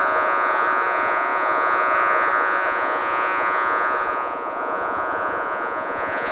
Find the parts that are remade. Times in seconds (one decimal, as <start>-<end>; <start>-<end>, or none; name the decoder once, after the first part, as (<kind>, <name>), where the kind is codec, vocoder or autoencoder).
0.0-6.3 (vocoder, Vocos)